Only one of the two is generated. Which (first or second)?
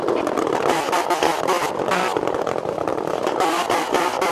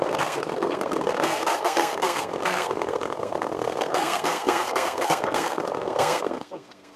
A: second